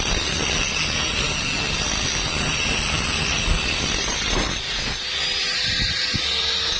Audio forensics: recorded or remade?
recorded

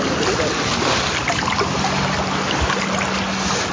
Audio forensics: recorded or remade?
recorded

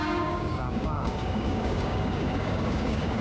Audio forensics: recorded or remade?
remade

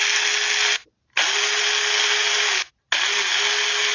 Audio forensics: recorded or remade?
recorded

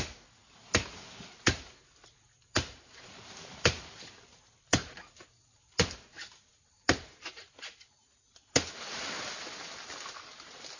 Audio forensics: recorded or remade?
recorded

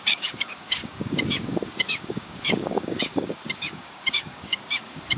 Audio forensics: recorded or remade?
remade